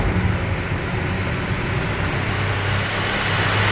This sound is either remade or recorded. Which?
recorded